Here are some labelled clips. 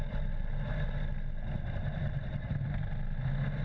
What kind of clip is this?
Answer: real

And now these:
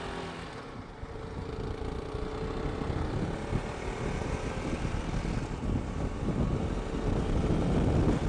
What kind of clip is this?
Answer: real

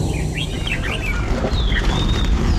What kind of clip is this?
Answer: real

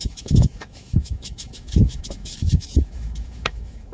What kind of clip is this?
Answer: fake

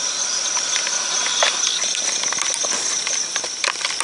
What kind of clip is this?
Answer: real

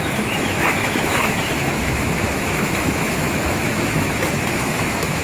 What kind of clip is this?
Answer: fake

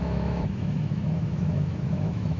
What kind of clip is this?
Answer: fake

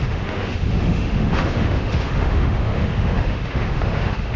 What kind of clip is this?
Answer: fake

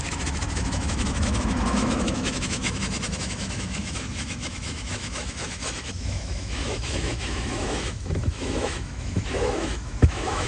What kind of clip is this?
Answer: fake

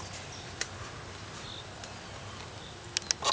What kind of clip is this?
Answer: real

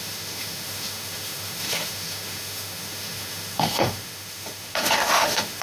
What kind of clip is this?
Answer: fake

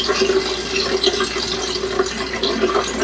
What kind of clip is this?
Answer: real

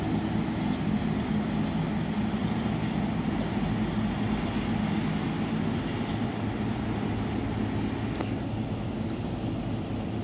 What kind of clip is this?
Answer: real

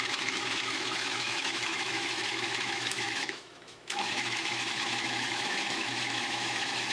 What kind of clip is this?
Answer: fake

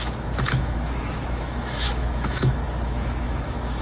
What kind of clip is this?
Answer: fake